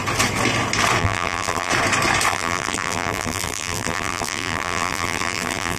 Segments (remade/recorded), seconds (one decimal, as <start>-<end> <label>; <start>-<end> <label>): 0.0-1.0 recorded; 1.0-1.7 remade; 1.7-2.3 recorded; 2.3-5.8 remade